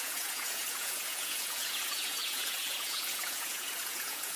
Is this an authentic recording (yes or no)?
no